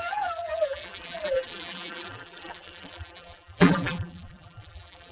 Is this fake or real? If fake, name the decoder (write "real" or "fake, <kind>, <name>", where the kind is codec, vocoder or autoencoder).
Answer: fake, vocoder, BigVGAN v2